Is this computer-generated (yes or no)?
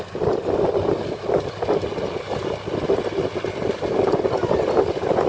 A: no